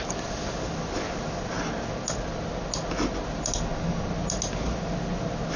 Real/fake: real